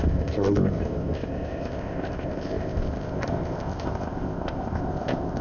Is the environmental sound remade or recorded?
remade